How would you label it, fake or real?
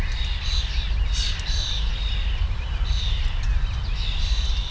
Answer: real